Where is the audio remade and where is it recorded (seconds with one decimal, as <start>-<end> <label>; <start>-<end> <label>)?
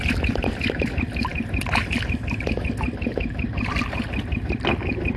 0.0-5.2 recorded